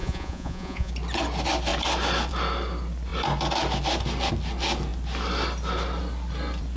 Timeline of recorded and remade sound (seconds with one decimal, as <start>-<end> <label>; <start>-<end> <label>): 0.0-0.9 remade; 0.9-6.8 recorded